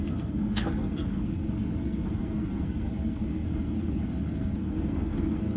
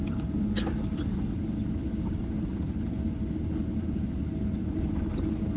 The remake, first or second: first